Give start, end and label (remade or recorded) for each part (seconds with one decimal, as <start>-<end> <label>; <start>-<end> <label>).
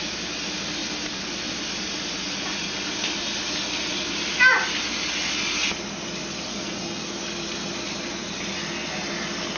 0.0-6.5 recorded; 6.5-7.1 remade; 7.1-9.6 recorded